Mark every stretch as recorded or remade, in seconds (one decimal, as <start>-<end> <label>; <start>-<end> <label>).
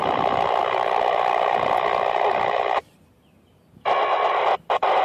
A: 0.0-5.0 recorded